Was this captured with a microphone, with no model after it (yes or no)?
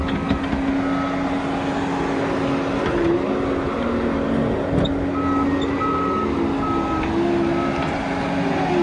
yes